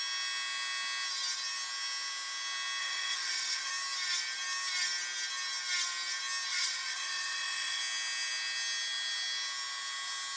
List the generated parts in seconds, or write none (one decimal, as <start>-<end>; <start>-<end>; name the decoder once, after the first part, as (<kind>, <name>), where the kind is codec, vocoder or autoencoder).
2.8-3.7 (vocoder, WaveNeXt); 6.5-7.8